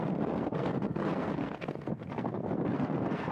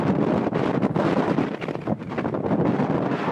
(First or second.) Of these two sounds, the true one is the second